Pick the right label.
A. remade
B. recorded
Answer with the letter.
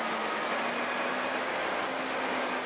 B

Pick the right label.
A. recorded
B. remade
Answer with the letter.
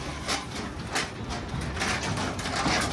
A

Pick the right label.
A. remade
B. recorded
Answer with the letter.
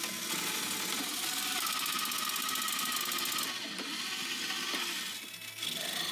B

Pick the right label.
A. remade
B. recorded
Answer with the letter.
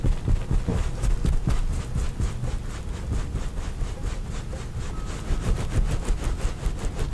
B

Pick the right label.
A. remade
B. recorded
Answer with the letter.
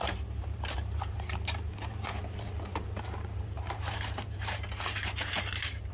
A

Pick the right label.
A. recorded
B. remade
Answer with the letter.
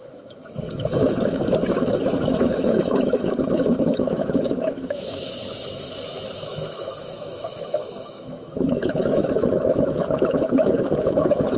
B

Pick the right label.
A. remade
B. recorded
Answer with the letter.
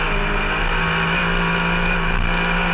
B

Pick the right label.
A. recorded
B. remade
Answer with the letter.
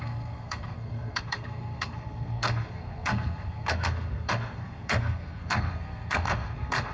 B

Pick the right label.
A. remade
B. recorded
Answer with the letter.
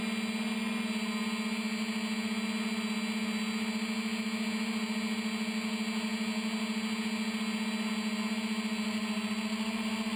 B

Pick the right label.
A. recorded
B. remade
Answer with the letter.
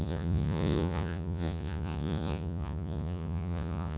B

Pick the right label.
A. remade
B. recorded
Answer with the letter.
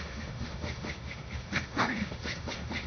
A